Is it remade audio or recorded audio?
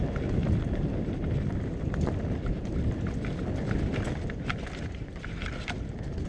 recorded